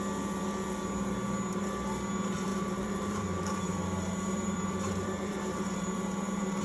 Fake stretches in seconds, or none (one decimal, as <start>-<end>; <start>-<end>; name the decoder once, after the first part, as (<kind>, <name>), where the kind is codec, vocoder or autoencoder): 2.5-6.6 (vocoder, BigVGAN v2)